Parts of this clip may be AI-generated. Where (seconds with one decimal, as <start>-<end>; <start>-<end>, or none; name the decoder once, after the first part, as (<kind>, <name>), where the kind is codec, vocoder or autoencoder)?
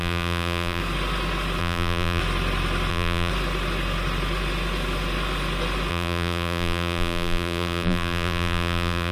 0.0-0.8 (vocoder, BigVGAN v2); 1.6-2.2; 2.9-3.3; 5.9-9.1